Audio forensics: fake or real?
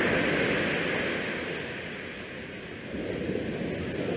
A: real